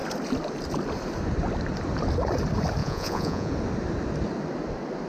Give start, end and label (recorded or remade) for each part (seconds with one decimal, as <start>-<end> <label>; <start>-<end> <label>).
0.0-2.8 recorded; 2.8-3.5 remade; 3.5-5.1 recorded